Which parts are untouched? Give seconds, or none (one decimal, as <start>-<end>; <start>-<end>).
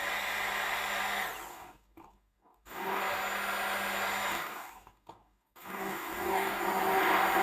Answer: 0.0-1.5; 3.0-4.3; 6.6-7.4